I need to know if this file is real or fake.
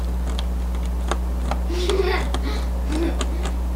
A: real